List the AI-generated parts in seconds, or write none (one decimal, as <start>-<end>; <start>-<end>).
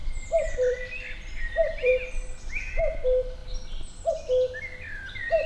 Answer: 0.0-1.9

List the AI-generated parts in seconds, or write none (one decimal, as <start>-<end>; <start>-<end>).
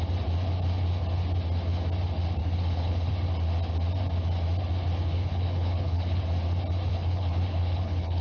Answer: 2.4-3.1; 5.1-6.2; 6.9-8.2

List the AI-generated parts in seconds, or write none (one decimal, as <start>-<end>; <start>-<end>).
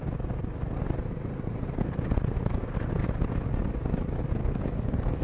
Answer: 4.4-5.2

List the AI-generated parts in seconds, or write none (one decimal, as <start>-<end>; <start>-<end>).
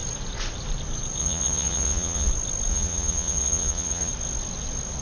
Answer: 1.2-2.3; 2.7-4.1